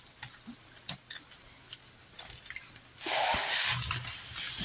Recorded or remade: recorded